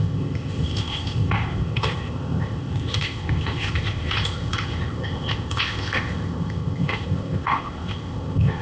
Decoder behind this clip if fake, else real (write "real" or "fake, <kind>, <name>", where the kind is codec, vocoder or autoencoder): fake, codec, ZipCodec